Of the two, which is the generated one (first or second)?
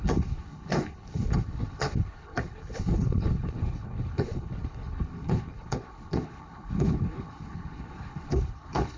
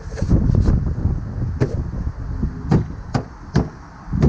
first